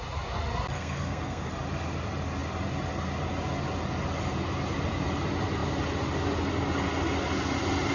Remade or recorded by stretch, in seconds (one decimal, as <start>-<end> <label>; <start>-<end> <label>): 0.0-0.7 recorded; 0.7-1.5 remade; 1.5-7.9 recorded